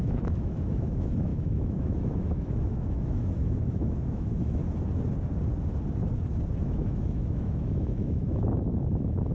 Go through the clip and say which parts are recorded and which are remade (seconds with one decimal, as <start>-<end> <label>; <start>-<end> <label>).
0.0-4.6 remade; 4.6-6.6 recorded; 6.6-9.3 remade